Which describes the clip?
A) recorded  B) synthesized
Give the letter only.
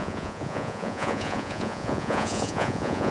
B